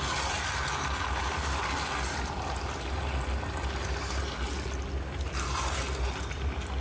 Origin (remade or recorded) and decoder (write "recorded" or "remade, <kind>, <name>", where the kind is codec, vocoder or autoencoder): recorded